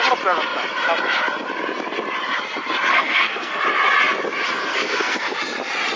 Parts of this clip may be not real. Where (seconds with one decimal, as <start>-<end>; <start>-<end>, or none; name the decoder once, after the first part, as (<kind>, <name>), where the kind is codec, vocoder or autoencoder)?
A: 2.9-3.6 (codec, SNAC); 4.7-5.4